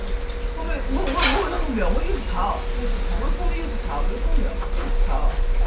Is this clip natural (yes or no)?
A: yes